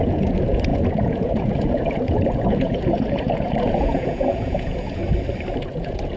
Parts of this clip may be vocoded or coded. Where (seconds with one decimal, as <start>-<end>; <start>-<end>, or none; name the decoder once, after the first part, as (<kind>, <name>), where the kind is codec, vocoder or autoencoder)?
0.0-5.0 (vocoder, Vocos); 5.6-6.2

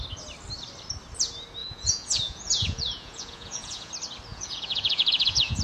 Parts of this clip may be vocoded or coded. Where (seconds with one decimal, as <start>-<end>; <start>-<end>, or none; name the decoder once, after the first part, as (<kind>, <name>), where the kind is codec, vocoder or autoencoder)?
1.6-3.9 (vocoder, Vocos); 4.3-5.6

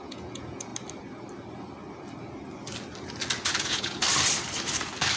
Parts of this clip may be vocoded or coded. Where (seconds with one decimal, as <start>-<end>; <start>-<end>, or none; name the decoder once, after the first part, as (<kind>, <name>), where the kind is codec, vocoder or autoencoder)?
0.0-0.7 (vocoder, Vocos); 3.6-4.0

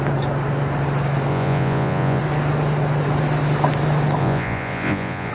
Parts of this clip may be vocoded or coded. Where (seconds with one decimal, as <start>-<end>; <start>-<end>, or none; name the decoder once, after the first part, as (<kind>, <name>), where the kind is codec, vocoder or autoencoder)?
1.3-2.2 (vocoder, Vocos); 4.2-5.3

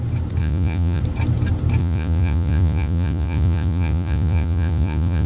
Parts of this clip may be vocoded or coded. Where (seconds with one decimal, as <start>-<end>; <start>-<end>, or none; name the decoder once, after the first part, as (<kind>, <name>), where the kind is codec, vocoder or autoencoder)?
0.4-1.0 (vocoder, Vocos); 1.8-5.3

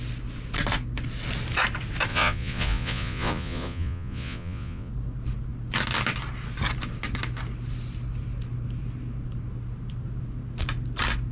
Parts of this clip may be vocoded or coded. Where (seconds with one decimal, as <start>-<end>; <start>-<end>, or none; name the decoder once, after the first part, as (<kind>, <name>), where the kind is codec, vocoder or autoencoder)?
2.1-4.9 (vocoder, Vocos)

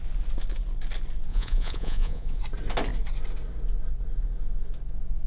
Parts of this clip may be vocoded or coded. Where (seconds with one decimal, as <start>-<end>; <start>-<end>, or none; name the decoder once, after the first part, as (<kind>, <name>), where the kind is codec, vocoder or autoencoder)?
1.3-2.4 (vocoder, Vocos)